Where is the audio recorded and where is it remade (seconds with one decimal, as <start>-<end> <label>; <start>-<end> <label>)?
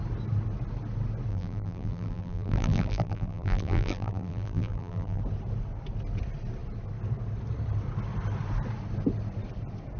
0.0-1.3 recorded; 1.3-5.2 remade; 5.2-10.0 recorded